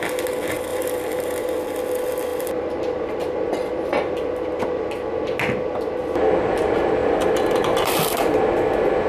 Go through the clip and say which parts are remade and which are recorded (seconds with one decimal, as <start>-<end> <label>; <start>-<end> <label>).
0.0-0.7 recorded; 0.7-1.5 remade; 1.5-2.3 recorded; 2.3-4.3 remade; 4.3-7.0 recorded; 7.0-8.4 remade; 8.4-9.1 recorded